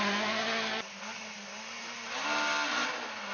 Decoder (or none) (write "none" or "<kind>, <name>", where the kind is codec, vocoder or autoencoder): none